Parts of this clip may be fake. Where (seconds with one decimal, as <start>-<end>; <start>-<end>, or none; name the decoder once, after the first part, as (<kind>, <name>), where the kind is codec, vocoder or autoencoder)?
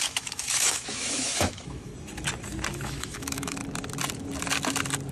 0.0-1.9 (autoencoder, DAC-VAE); 2.7-3.6